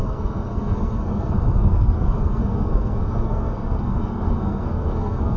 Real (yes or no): no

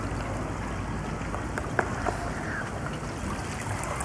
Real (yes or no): yes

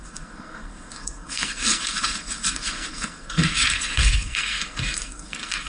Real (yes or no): no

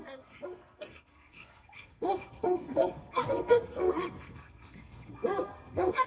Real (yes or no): no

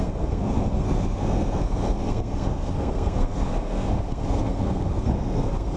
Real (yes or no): no